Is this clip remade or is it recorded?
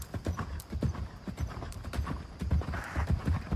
remade